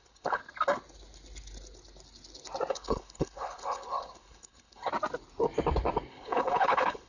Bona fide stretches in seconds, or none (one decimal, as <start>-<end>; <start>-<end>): 0.4-2.7; 4.9-6.1